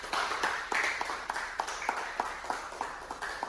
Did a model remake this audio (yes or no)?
no